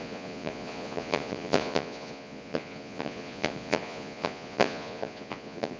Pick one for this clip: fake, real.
fake